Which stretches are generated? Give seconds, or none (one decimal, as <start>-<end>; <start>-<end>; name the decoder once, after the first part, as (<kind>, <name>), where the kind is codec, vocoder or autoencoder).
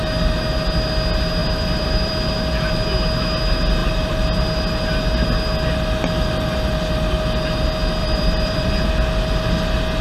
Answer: 1.4-2.1 (vocoder, BigVGAN v2); 3.8-4.4; 8.0-8.9